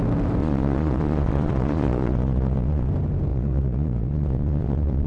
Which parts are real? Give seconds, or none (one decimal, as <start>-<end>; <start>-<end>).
0.0-0.4; 2.9-3.3

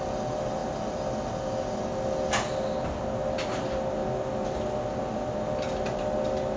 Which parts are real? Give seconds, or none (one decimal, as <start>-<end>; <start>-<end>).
0.0-6.6

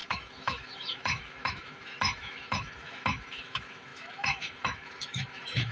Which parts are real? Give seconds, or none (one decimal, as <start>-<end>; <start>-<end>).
none

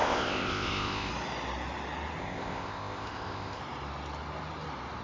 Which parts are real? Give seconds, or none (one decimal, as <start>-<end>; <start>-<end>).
1.1-2.2; 3.6-5.0

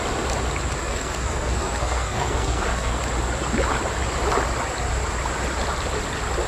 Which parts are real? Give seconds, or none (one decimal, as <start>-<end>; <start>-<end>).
0.0-0.8; 3.0-6.5